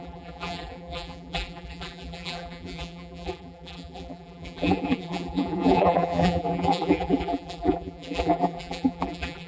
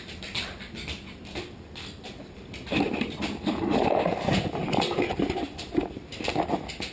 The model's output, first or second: first